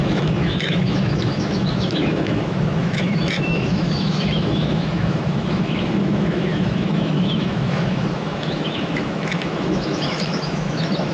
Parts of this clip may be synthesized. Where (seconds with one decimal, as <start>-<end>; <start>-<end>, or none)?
0.0-11.1